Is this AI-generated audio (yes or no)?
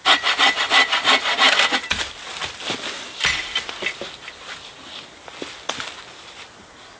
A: no